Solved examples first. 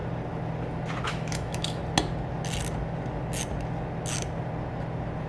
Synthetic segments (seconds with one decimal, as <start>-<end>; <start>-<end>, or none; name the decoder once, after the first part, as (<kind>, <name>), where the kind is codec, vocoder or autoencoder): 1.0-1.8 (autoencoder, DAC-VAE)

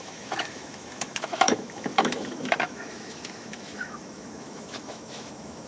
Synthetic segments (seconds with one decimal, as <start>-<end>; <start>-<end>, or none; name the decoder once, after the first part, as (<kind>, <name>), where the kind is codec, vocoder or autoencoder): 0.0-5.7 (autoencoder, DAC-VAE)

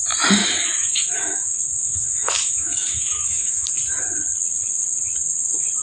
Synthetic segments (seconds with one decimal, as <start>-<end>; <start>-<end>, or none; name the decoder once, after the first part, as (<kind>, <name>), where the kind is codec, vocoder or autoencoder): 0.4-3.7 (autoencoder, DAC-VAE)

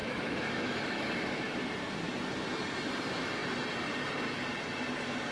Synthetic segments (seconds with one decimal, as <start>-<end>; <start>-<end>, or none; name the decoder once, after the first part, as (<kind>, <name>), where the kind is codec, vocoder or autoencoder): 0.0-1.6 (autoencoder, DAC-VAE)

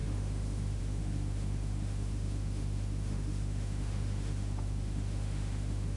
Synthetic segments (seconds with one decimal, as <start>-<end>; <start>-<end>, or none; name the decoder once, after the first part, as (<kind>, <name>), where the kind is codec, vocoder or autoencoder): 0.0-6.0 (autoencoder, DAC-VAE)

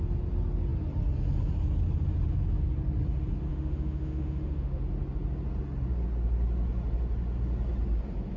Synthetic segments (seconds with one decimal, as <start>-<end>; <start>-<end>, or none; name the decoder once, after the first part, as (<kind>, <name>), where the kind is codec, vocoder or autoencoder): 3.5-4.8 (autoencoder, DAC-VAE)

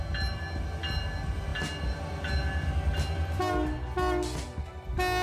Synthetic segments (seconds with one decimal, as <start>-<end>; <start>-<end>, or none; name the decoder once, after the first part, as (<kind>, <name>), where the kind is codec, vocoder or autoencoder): none

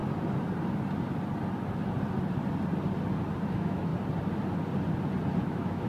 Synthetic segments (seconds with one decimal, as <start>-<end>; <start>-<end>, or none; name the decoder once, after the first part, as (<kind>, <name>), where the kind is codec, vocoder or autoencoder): 3.5-3.9 (autoencoder, DAC-VAE); 5.4-5.9